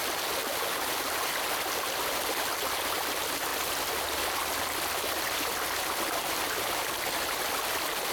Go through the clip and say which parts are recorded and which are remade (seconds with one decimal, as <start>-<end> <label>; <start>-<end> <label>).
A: 0.0-0.4 recorded; 0.4-1.3 remade; 1.3-8.1 recorded